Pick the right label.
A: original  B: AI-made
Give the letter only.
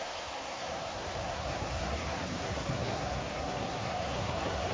B